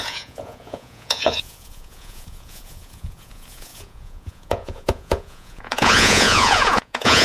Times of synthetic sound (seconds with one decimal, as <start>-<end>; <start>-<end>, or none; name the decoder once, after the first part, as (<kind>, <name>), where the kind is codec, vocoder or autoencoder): 0.0-7.2 (vocoder, Vocos)